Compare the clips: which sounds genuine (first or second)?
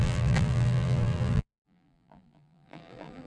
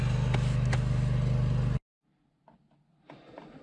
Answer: second